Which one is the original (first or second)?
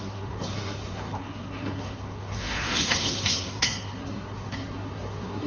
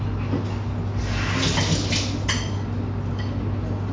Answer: second